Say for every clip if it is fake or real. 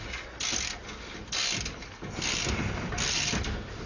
real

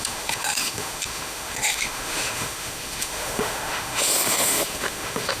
fake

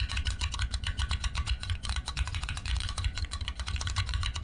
fake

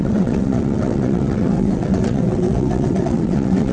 fake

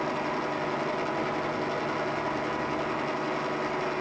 real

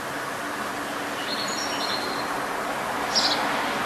real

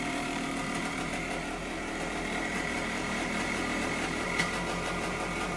fake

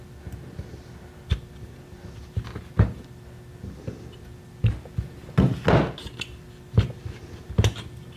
real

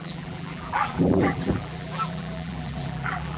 fake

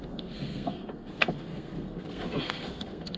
fake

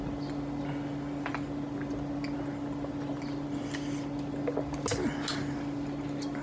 real